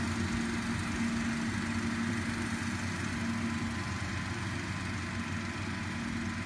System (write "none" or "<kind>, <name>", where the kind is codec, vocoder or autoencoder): none